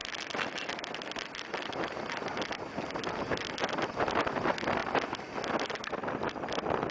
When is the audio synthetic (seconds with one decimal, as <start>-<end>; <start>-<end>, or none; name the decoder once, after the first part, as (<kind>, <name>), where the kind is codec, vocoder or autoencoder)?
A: none